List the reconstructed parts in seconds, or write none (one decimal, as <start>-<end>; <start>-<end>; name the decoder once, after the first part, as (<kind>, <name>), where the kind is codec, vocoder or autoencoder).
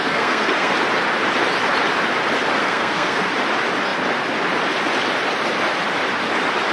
0.0-0.7 (codec, SNAC); 2.6-3.3